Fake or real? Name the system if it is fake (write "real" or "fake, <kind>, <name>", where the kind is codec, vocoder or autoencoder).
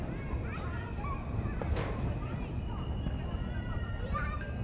real